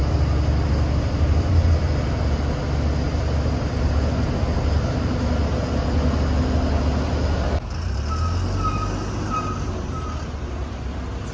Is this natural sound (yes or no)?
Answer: yes